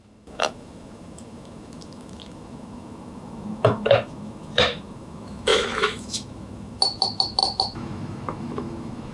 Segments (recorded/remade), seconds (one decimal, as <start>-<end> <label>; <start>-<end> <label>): 0.0-9.1 remade